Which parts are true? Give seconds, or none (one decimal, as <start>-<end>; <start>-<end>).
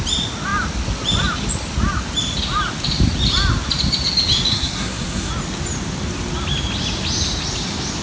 0.0-4.5; 5.3-8.0